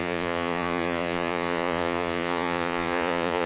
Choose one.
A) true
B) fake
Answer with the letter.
B